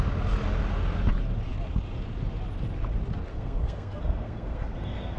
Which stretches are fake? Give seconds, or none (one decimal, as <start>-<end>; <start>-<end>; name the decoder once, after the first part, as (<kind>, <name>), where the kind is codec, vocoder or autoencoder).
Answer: 3.3-5.2 (codec, SNAC)